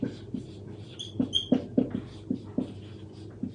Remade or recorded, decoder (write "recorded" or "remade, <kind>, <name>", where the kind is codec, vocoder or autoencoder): recorded